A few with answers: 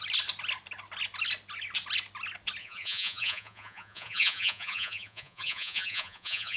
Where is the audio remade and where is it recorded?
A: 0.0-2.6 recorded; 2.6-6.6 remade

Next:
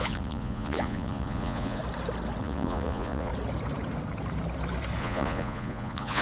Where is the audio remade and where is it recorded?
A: 0.0-1.8 remade; 1.8-2.4 recorded; 2.4-3.3 remade; 3.3-5.0 recorded; 5.0-6.2 remade

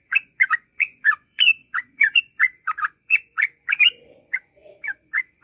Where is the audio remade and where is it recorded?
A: 0.0-5.4 remade